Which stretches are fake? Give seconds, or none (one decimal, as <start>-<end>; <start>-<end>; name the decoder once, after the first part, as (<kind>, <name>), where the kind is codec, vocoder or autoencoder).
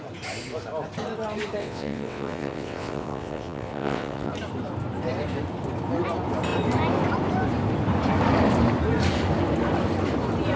1.6-4.3 (vocoder, WaveNeXt)